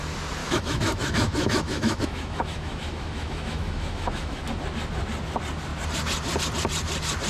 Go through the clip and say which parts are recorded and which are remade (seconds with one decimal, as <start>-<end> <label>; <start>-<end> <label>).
0.0-0.4 recorded; 0.4-4.5 remade; 4.5-7.3 recorded